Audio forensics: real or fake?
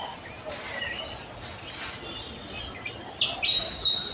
real